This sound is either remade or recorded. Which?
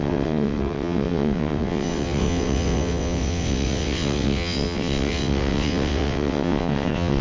remade